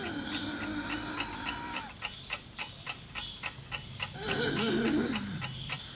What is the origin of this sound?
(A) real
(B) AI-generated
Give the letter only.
A